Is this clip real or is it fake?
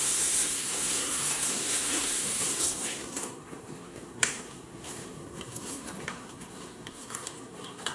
fake